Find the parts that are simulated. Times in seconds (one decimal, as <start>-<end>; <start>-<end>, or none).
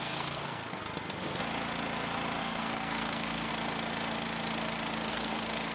0.0-0.8; 2.4-3.5; 5.1-5.7